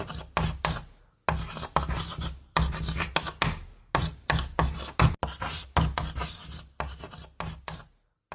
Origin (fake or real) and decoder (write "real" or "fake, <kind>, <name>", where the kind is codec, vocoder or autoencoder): real